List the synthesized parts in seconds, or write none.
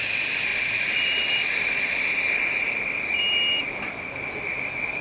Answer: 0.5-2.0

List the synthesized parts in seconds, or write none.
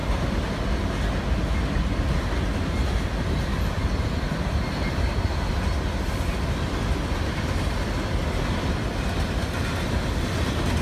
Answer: none